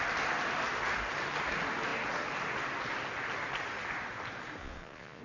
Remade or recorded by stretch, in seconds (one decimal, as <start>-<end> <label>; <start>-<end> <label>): 0.0-4.6 recorded; 4.6-5.2 remade